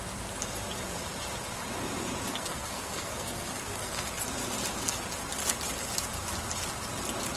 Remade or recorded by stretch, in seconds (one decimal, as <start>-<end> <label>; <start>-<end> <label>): 0.0-2.3 recorded; 2.3-4.1 remade; 4.1-7.4 recorded